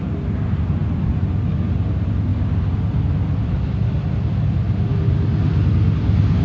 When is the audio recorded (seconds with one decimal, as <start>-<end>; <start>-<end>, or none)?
0.0-6.4